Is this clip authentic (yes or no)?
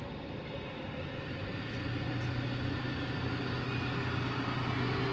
yes